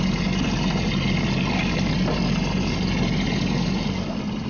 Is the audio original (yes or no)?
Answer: yes